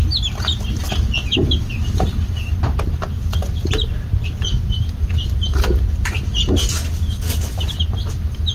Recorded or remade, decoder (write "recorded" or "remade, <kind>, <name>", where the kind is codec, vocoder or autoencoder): recorded